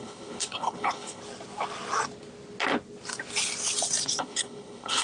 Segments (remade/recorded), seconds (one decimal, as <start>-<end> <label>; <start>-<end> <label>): 0.0-1.2 remade; 1.2-4.2 recorded; 4.2-5.0 remade